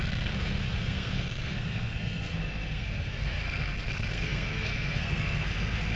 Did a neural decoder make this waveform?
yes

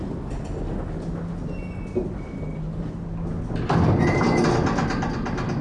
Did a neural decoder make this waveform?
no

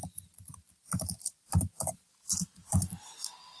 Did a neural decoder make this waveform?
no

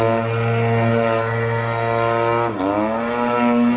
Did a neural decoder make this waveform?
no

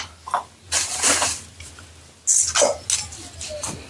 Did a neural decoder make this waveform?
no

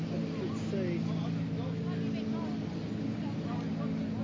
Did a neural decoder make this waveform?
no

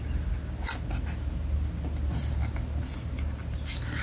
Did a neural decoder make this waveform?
no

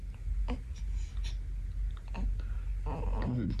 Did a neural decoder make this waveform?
no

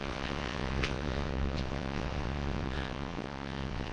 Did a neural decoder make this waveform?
yes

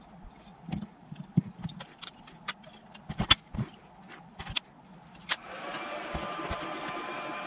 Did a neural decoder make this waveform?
yes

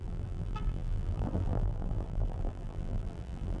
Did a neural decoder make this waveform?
yes